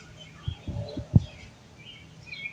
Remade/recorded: recorded